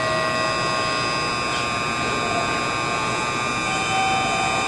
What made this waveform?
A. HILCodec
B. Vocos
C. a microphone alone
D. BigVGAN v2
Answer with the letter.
C